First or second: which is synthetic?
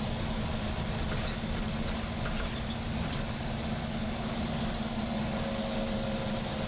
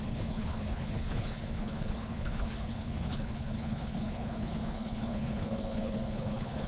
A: second